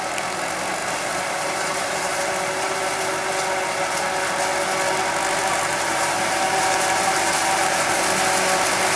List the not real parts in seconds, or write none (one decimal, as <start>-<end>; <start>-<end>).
0.8-2.8; 5.4-8.0